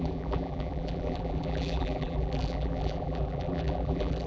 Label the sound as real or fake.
fake